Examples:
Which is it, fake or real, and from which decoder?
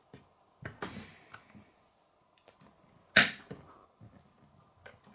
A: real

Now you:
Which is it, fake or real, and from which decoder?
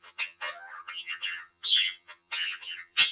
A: fake, vocoder, HiFi-GAN